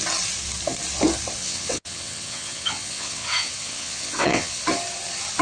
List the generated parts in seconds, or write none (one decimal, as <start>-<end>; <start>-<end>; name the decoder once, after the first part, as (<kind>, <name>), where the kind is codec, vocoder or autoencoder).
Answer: 1.4-4.6 (vocoder, WaveNeXt)